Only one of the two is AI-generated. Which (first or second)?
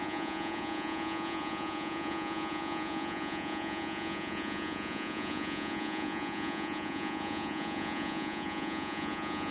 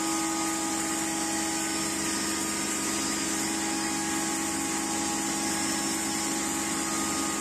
first